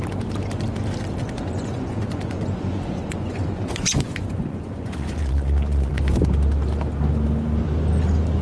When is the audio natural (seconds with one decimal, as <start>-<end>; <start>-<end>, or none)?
0.0-1.2; 6.0-8.4